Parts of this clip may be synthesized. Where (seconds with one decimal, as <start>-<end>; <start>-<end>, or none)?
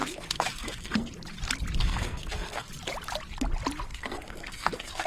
0.0-1.1; 1.8-2.7; 3.9-5.1